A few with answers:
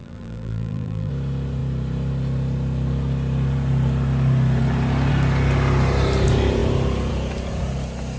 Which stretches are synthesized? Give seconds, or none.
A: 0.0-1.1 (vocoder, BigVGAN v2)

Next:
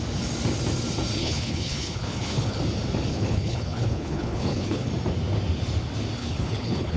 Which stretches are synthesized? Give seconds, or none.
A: 1.2-2.6 (codec, HILCodec); 3.1-4.9; 6.2-7.0